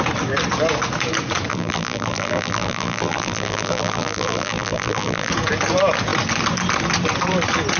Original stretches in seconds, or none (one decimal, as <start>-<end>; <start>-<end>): 0.0-1.5; 5.3-7.8